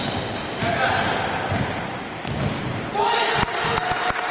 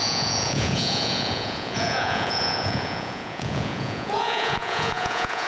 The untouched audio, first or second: first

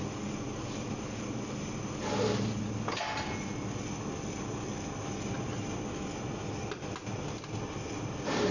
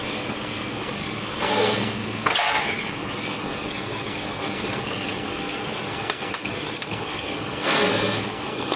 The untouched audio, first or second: first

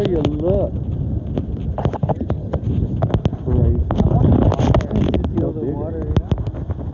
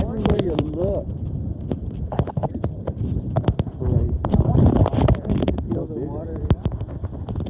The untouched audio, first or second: first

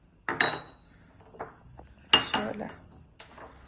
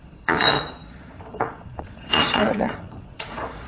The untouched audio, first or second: first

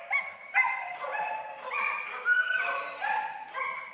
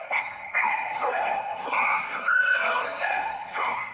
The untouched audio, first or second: first